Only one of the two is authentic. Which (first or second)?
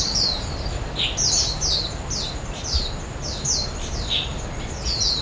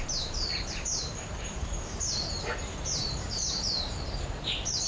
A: first